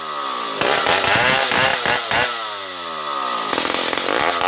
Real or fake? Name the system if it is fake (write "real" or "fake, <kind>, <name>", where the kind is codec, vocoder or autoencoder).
real